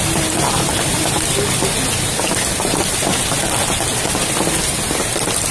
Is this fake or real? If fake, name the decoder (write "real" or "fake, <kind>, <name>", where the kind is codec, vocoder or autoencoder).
real